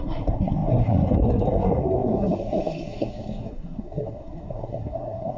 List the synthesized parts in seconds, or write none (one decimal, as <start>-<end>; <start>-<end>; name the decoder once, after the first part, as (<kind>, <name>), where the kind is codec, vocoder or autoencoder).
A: 0.0-5.4 (codec, SNAC)